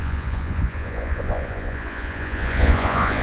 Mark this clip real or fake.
fake